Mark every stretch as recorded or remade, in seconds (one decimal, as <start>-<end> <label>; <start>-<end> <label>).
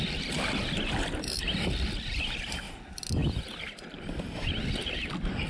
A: 0.0-5.5 recorded